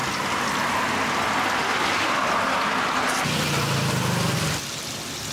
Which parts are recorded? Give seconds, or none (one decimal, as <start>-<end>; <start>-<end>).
0.0-5.3